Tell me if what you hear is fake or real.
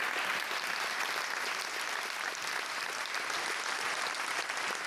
real